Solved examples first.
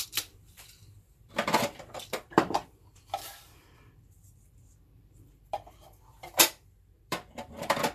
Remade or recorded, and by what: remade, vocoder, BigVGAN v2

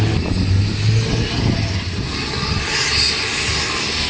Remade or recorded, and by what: recorded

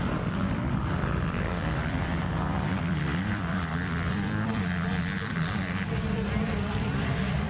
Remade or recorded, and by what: remade, vocoder, BigVGAN v2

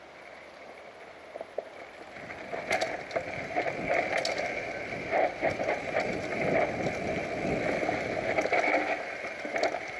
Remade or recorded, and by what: recorded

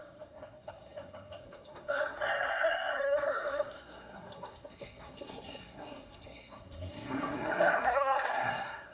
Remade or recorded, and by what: remade, codec, SNAC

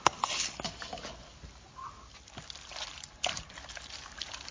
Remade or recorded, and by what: recorded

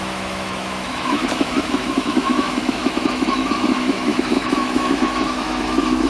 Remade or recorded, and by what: remade, autoencoder, DAC-VAE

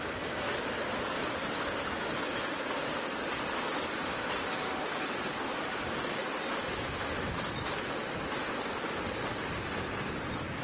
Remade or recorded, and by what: recorded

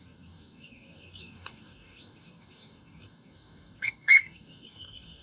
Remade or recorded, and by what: remade, codec, DAC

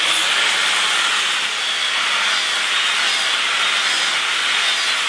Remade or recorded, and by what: recorded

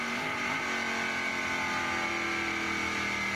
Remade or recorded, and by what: recorded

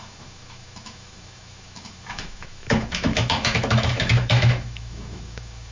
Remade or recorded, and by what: remade, autoencoder, DAC-VAE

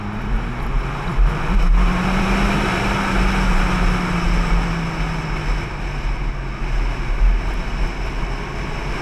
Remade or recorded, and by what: recorded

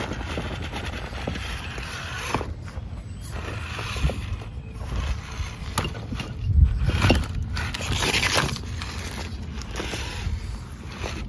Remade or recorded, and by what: recorded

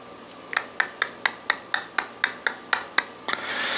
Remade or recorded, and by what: recorded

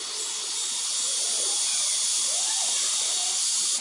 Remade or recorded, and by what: remade, vocoder, BigVGAN v2